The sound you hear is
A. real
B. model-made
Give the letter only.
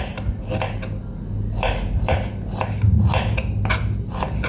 A